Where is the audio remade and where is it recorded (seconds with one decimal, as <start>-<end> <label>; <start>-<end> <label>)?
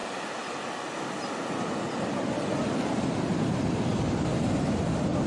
0.0-5.3 recorded